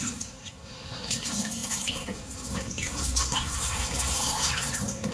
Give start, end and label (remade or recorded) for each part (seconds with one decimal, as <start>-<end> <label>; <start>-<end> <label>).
0.0-5.1 remade